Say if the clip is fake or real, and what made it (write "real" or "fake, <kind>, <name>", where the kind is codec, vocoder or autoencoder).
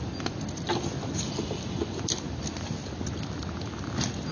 real